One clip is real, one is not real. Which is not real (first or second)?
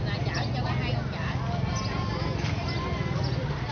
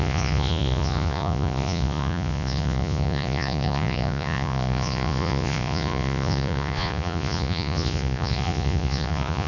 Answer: second